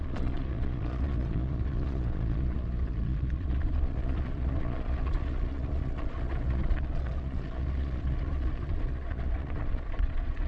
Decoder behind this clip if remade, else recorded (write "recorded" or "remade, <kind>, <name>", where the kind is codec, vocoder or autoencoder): remade, vocoder, Vocos